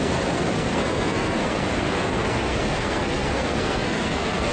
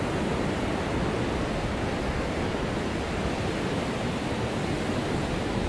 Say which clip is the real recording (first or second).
second